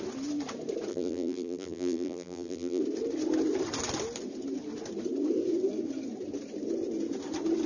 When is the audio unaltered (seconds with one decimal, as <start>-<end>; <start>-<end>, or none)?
0.0-0.9; 2.8-7.7